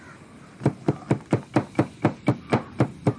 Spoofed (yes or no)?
no